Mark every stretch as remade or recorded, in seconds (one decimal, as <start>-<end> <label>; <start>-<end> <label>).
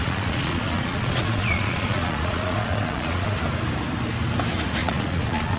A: 0.0-3.4 remade; 3.4-4.8 recorded; 4.8-5.6 remade